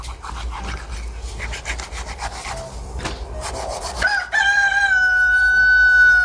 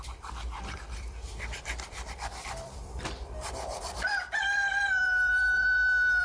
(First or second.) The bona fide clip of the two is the first